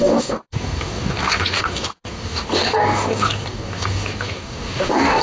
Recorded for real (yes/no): no